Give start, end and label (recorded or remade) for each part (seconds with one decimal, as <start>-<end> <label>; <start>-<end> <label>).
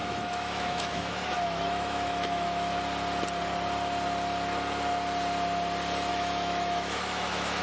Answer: 0.0-2.8 remade; 2.8-6.1 recorded; 6.1-7.6 remade